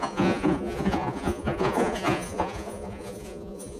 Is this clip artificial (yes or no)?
yes